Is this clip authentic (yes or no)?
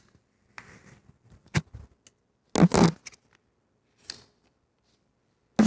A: yes